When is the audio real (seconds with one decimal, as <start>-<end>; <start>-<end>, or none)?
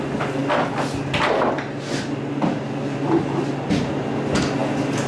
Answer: 0.0-5.1